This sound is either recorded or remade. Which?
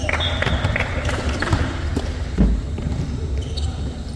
remade